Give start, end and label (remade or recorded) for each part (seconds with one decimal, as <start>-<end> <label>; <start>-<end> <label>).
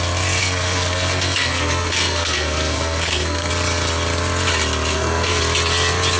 0.0-0.4 recorded; 0.4-3.5 remade; 3.5-4.9 recorded; 4.9-5.4 remade; 5.4-6.2 recorded